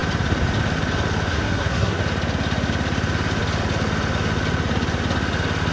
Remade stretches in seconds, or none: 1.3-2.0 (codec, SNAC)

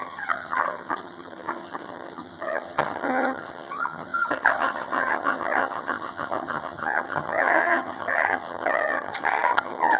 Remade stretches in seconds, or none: 0.0-10.0 (vocoder, HiFi-GAN)

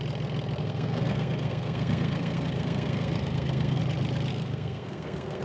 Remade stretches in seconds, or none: 0.6-3.8 (codec, SNAC); 4.3-5.4

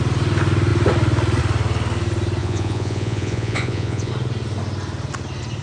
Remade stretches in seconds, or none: 2.4-4.1 (vocoder, Vocos)

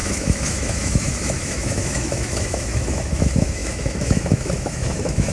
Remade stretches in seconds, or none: 0.0-5.3 (autoencoder, DAC-VAE)